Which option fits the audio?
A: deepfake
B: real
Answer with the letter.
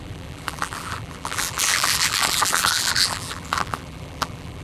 A